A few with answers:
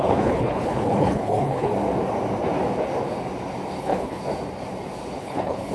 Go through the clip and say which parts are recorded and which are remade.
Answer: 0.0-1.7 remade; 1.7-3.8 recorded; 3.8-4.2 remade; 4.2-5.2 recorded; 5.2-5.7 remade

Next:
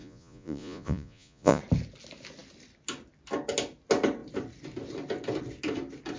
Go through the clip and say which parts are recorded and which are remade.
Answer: 0.0-1.6 remade; 1.6-6.2 recorded